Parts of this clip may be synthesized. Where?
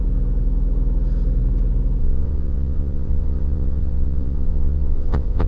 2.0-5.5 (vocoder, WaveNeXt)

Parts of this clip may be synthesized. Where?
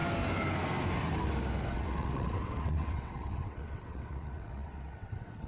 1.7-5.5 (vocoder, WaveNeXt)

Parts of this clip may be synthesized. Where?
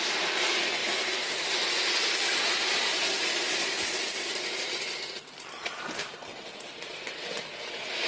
6.3-7.4 (vocoder, WaveNeXt)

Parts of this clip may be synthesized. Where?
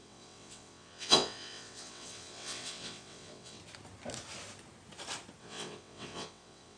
0.0-3.6 (vocoder, WaveNeXt); 5.4-6.8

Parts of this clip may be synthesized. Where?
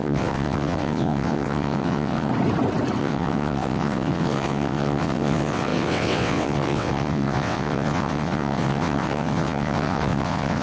0.0-2.3 (vocoder, WaveNeXt); 3.0-10.6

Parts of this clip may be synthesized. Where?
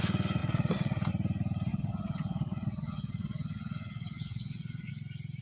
0.4-1.1 (vocoder, WaveNeXt); 1.7-4.9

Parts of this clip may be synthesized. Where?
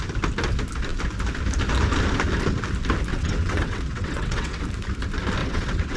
3.1-4.6 (vocoder, WaveNeXt); 5.4-6.0